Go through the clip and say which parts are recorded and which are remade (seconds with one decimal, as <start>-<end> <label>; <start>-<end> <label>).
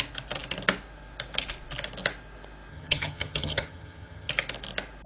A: 0.0-2.7 recorded; 2.7-4.3 remade; 4.3-5.1 recorded